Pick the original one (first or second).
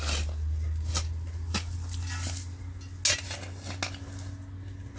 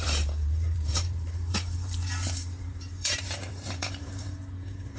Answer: first